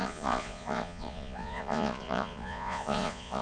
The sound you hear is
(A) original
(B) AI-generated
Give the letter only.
B